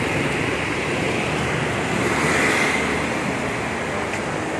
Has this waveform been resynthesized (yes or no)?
no